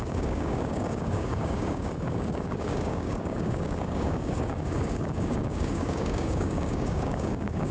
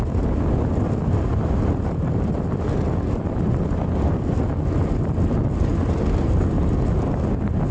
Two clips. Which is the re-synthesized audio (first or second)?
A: first